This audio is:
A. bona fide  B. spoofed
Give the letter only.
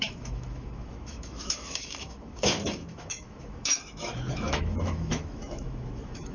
B